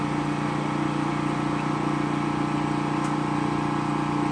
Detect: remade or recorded recorded